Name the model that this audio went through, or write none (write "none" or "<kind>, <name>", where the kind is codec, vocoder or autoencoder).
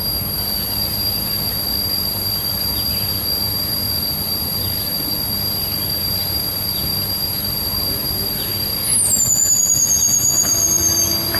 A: none